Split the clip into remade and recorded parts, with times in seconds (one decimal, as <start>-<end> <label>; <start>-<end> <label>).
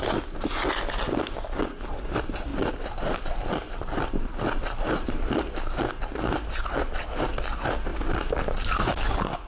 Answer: 0.0-2.5 recorded; 2.5-5.2 remade; 5.2-9.5 recorded